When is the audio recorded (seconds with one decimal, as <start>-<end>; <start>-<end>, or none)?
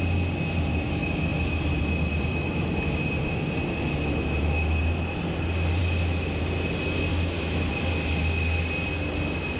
0.0-7.1; 7.7-9.6